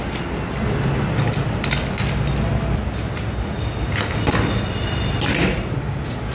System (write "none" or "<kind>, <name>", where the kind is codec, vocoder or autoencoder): none